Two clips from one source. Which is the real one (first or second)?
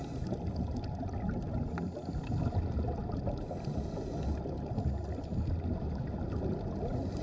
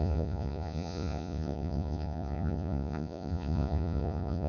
first